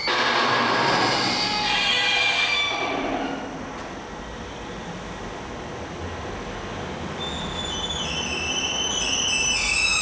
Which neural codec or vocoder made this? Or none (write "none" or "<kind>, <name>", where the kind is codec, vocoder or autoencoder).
none